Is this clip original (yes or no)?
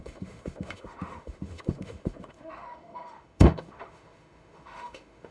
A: no